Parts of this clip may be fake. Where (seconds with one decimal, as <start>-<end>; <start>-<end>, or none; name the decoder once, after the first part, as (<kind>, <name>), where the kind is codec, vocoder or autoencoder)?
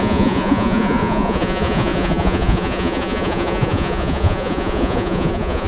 0.0-5.7 (vocoder, Vocos)